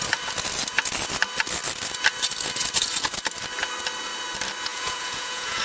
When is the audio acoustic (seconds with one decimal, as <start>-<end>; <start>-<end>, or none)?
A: 0.0-4.7